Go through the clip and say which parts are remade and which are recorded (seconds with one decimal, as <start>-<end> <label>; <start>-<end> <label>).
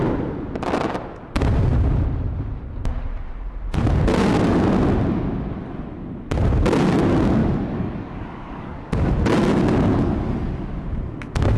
0.0-7.4 recorded; 7.4-9.1 remade; 9.1-11.6 recorded